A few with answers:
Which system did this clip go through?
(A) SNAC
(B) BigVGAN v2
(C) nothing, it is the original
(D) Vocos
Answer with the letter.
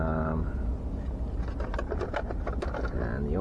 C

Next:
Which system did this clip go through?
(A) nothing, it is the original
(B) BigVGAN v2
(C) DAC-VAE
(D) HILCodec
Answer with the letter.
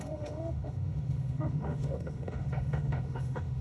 C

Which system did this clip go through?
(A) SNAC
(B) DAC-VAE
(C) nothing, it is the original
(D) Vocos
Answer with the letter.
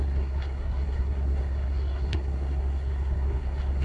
A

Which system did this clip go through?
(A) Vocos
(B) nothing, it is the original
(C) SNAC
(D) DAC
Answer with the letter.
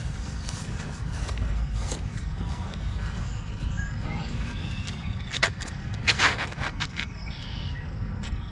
C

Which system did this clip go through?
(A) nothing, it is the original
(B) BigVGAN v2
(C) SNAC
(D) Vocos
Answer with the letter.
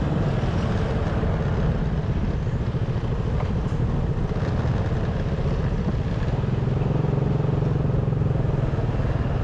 A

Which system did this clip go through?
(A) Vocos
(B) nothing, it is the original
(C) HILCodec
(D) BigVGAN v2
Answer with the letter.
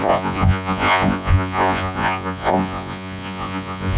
A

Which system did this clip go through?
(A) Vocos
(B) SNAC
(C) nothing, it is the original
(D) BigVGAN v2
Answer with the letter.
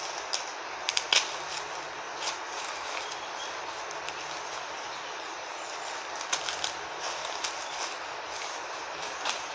C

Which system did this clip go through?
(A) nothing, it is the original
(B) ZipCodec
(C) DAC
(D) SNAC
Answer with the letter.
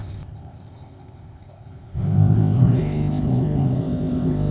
B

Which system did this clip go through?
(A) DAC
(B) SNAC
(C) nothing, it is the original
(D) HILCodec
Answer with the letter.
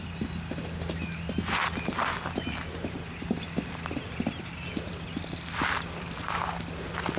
C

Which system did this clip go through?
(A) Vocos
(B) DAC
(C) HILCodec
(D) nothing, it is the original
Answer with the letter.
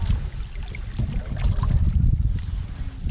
D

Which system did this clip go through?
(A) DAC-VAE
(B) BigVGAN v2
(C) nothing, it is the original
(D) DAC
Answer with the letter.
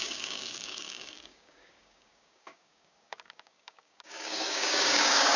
D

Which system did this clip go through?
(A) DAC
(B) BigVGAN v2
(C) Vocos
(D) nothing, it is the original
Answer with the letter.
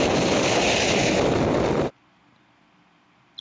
D